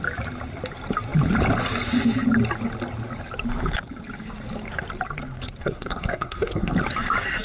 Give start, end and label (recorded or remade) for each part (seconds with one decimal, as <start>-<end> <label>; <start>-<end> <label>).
0.0-5.6 recorded; 5.6-6.7 remade; 6.7-7.4 recorded